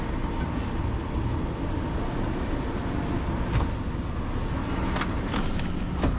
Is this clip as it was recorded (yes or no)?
yes